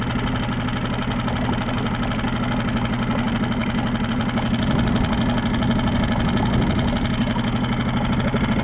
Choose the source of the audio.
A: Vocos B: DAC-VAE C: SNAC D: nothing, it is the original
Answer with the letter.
D